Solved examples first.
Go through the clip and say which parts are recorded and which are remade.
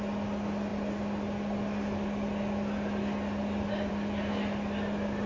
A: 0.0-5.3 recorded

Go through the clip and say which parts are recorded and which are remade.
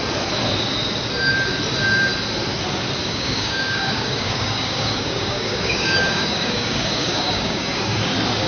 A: 0.0-3.0 recorded; 3.0-8.1 remade; 8.1-8.5 recorded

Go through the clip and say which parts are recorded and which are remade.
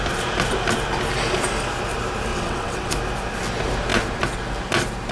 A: 0.0-2.3 recorded; 2.3-2.9 remade; 2.9-5.1 recorded